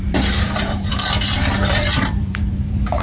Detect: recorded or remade remade